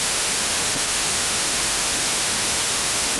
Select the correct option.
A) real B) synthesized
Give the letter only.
B